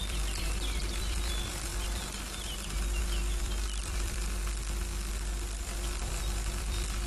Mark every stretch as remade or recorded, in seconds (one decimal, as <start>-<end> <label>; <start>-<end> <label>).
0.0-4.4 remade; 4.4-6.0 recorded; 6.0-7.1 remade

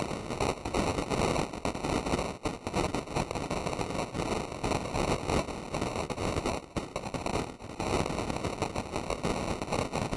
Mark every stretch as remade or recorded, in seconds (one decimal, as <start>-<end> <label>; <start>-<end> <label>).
0.0-5.9 recorded; 5.9-7.9 remade; 7.9-10.2 recorded

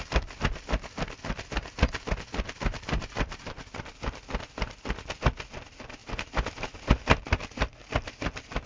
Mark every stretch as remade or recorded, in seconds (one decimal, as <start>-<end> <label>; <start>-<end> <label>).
0.0-8.7 recorded

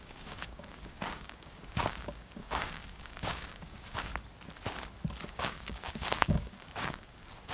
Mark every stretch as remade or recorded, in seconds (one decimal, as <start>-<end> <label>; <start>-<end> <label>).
0.0-4.1 remade; 4.1-5.3 recorded; 5.3-7.5 remade

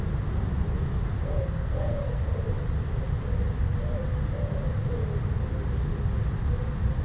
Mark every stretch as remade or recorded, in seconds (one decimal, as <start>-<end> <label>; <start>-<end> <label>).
0.0-1.2 recorded; 1.2-2.2 remade; 2.2-7.0 recorded

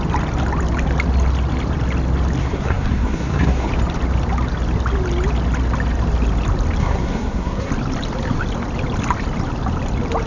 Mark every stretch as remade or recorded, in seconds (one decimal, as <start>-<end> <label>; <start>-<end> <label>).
0.0-2.4 recorded; 2.4-3.7 remade; 3.7-6.8 recorded; 6.8-7.7 remade; 7.7-10.3 recorded

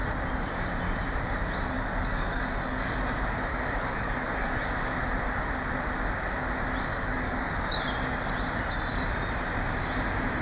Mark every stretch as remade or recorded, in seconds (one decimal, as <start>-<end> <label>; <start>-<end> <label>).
0.0-1.9 recorded; 1.9-2.9 remade; 2.9-3.5 recorded; 3.5-4.5 remade; 4.5-6.9 recorded; 6.9-7.5 remade; 7.5-10.4 recorded

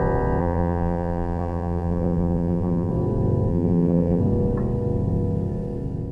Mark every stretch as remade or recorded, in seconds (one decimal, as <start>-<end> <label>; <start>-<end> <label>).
0.0-0.4 recorded; 0.4-2.9 remade; 2.9-3.5 recorded; 3.5-4.2 remade; 4.2-6.1 recorded